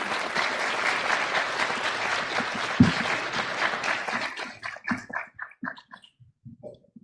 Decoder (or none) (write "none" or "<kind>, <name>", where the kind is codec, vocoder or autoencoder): none